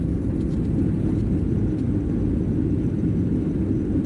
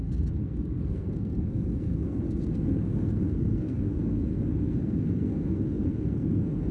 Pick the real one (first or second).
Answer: first